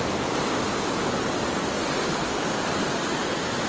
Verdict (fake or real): real